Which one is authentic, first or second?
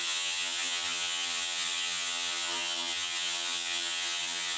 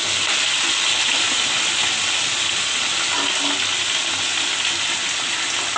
second